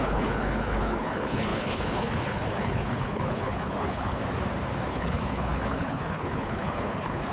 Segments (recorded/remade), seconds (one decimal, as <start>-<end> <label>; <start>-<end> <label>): 0.0-4.2 remade; 4.2-4.9 recorded; 4.9-7.3 remade